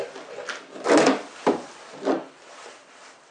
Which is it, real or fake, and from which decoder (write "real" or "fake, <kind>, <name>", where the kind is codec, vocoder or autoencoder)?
real